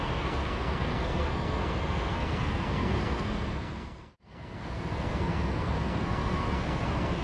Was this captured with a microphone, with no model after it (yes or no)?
no